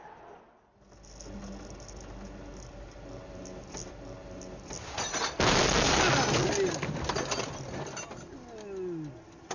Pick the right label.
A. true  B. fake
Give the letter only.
A